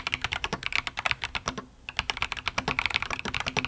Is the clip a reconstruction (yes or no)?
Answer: no